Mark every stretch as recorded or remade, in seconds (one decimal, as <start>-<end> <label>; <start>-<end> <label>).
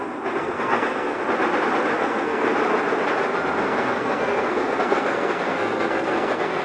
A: 0.0-0.4 recorded; 0.4-1.2 remade; 1.2-2.0 recorded; 2.0-2.5 remade; 2.5-3.6 recorded; 3.6-6.6 remade